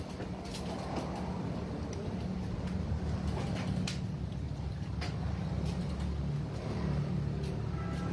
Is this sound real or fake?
real